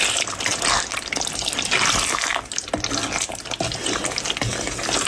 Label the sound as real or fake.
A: real